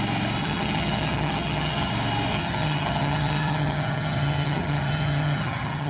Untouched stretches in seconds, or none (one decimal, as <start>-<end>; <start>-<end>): 0.0-0.4; 1.9-2.3